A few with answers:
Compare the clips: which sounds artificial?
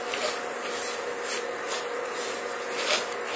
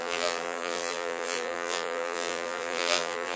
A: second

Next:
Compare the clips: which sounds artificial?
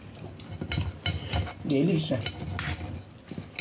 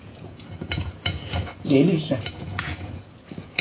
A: second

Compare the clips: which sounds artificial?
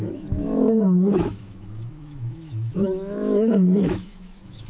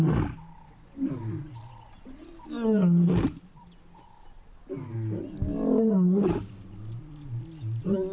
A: first